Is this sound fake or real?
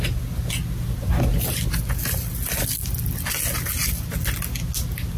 real